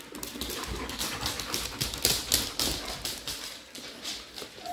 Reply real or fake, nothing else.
real